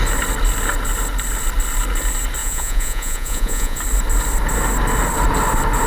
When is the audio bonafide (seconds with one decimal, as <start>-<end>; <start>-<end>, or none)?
0.0-2.4; 3.8-5.9